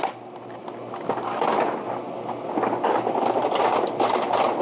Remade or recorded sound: recorded